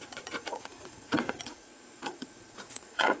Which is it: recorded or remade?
remade